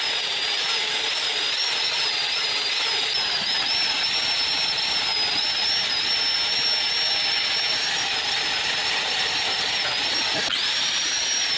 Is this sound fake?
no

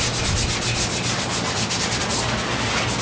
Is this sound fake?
no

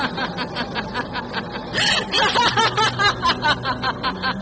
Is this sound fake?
no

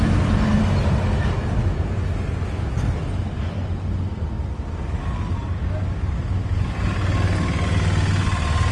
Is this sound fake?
no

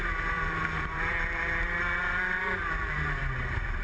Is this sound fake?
yes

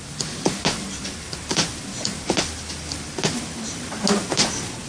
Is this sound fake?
no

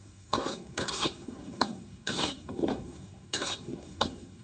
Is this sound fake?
yes